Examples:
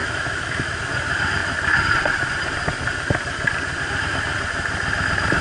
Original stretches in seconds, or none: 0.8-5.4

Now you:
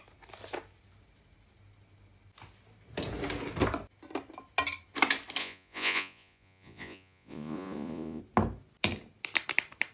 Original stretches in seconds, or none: 0.0-5.4; 8.2-9.9

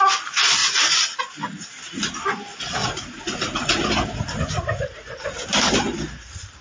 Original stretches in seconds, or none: 0.0-0.6; 1.2-2.8; 3.8-6.6